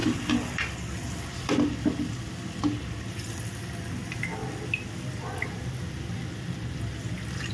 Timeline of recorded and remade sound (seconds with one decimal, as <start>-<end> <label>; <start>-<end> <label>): 0.0-7.5 recorded